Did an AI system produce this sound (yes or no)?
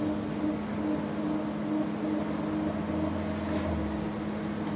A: no